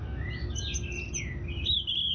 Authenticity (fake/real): real